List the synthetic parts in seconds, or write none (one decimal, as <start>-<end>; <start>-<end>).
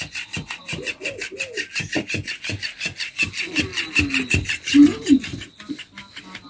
none